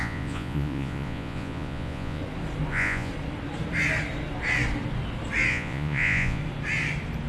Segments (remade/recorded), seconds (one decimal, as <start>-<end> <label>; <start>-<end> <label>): 0.0-2.2 remade; 2.2-2.7 recorded; 2.7-3.1 remade; 3.1-5.5 recorded; 5.5-6.4 remade; 6.4-7.3 recorded